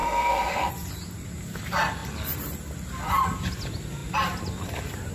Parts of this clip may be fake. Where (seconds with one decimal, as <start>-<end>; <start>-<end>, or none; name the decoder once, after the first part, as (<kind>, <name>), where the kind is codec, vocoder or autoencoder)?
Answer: 0.0-0.7 (autoencoder, DAC-VAE)

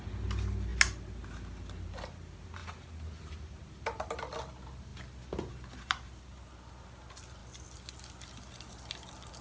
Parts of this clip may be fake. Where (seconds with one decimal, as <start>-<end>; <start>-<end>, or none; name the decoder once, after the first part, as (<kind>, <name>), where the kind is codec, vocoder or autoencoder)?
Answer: none

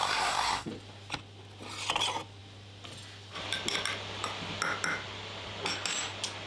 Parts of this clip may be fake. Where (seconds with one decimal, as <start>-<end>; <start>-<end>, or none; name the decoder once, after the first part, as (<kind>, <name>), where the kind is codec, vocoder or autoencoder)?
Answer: 0.0-0.7 (codec, SNAC)

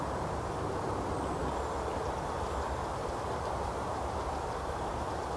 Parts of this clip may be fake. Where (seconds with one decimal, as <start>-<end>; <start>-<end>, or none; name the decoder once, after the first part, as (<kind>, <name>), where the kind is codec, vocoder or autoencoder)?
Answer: 1.9-2.5 (vocoder, BigVGAN v2); 3.0-5.4

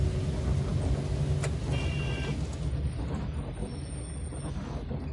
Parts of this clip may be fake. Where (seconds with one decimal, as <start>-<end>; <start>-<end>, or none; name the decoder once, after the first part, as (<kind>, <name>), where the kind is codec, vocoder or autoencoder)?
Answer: none

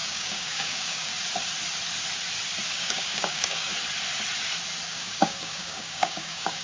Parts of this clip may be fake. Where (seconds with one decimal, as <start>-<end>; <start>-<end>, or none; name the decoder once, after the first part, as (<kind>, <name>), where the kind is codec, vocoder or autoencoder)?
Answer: 0.0-1.1 (codec, DAC); 2.7-3.7; 4.9-6.6

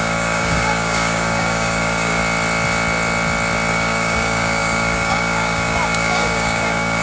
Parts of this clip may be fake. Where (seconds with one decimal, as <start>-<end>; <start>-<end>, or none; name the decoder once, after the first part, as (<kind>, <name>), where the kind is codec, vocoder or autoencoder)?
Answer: 0.0-2.2 (codec, DAC); 3.7-7.0